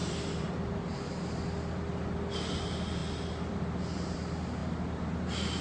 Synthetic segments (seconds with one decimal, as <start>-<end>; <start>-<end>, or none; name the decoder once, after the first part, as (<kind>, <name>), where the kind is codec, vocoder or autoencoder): none